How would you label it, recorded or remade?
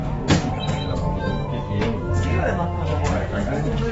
remade